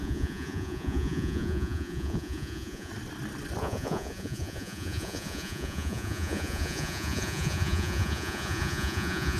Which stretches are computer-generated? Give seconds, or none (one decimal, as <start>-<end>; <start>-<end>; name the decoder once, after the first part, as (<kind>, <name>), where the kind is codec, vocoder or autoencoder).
0.0-2.9 (vocoder, Vocos); 3.6-9.4